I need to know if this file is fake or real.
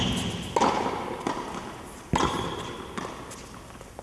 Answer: real